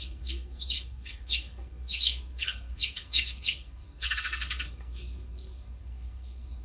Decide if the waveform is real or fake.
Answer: fake